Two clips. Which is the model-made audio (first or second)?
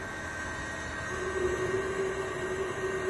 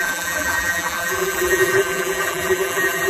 second